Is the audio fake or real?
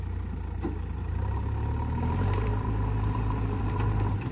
fake